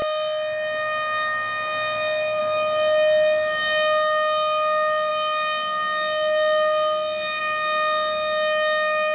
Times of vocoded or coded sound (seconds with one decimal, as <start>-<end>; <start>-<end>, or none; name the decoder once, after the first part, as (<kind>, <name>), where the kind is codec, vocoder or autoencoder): none